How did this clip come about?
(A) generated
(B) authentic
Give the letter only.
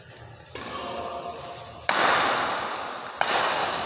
B